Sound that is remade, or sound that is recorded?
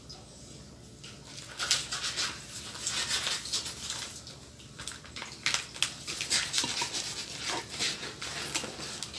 recorded